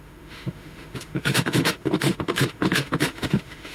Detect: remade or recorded remade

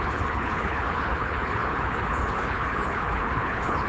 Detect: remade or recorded remade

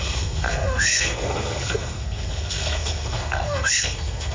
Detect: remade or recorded remade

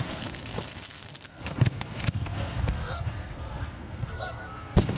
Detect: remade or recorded remade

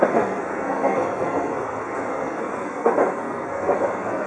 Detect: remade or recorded remade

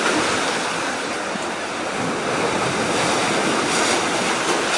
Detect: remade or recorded recorded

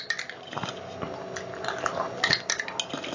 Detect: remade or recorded recorded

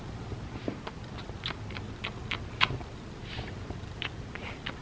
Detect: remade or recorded recorded